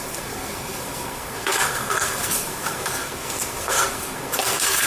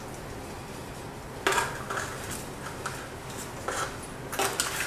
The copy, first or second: first